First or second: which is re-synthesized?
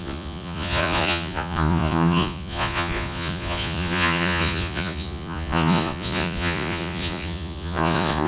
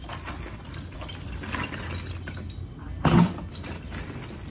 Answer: first